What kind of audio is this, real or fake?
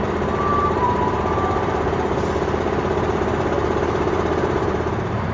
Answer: fake